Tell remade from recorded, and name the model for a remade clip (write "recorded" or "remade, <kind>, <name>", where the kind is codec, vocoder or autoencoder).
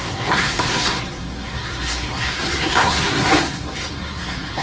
remade, codec, SNAC